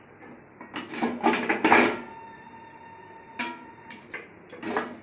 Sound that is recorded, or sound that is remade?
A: recorded